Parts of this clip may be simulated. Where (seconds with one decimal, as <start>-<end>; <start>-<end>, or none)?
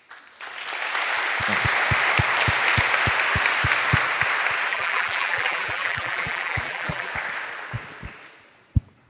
4.7-7.1